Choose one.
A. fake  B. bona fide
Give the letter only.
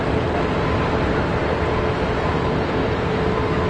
B